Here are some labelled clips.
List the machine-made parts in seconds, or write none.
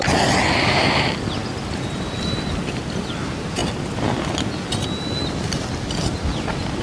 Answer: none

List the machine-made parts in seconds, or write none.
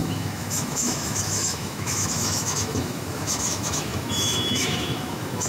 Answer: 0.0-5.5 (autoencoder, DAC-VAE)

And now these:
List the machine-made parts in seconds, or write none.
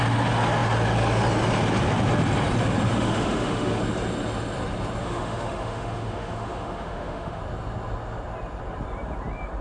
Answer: 2.9-3.8 (autoencoder, DAC-VAE); 5.0-7.4